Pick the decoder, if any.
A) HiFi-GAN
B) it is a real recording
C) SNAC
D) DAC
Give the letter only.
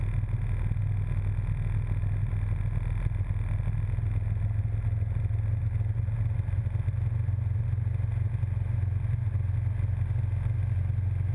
B